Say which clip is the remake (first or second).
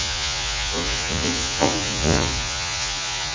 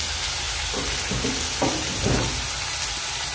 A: first